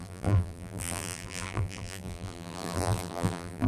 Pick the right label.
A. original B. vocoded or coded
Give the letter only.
B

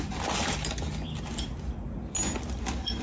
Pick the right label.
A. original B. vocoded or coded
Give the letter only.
A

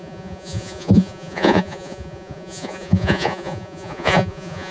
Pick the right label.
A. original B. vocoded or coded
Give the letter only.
B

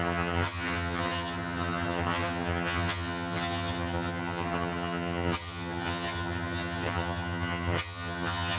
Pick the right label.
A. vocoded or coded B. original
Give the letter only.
A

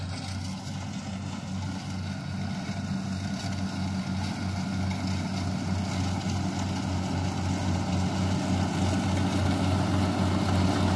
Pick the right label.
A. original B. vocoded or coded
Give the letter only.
A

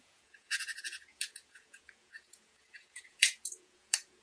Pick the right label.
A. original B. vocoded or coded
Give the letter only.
B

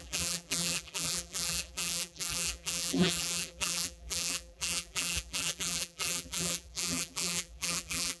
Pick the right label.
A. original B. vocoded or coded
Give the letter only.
B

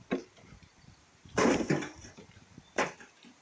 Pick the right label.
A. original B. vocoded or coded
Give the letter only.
B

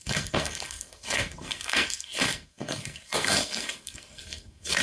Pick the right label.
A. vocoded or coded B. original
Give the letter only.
A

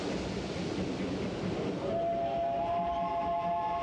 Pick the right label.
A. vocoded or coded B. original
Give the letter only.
B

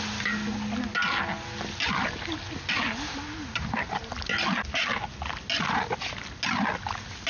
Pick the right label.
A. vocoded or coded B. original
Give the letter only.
B